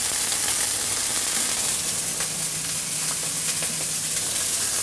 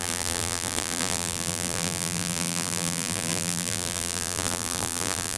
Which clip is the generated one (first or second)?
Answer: second